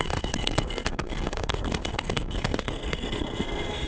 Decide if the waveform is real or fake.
fake